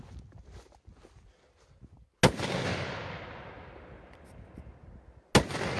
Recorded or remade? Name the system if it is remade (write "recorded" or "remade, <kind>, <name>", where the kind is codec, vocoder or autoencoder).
recorded